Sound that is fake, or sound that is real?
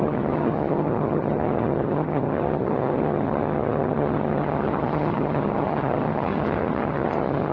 fake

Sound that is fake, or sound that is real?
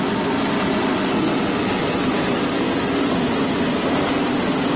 real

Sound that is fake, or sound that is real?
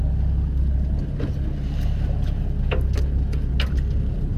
real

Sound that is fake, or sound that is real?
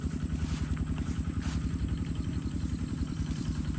fake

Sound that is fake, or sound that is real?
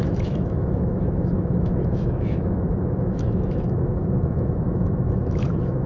fake